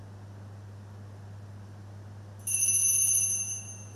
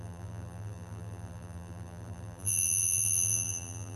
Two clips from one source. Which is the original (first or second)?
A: first